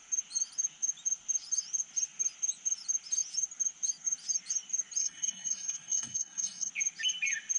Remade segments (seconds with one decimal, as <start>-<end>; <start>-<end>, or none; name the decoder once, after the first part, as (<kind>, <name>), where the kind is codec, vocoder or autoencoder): 5.0-6.7 (codec, SNAC)